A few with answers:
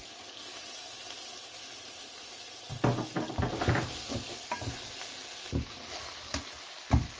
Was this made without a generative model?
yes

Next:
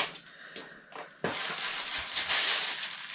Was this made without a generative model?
yes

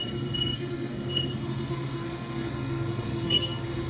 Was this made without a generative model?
no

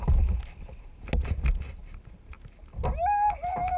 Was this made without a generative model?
yes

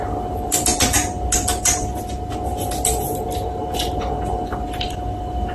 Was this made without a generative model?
yes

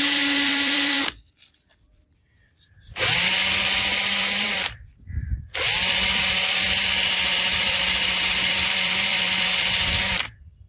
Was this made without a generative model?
no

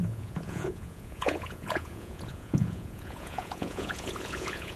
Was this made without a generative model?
no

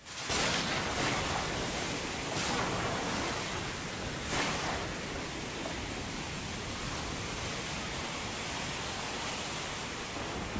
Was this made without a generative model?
yes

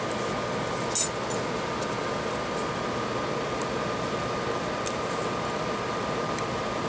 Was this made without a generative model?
yes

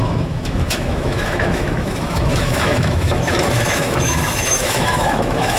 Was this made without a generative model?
no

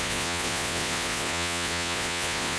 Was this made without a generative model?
no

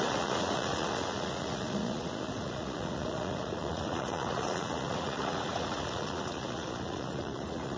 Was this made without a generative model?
no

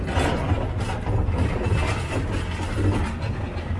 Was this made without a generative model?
yes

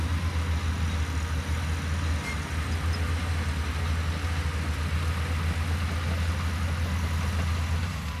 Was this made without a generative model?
yes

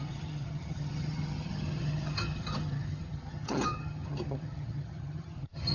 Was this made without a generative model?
no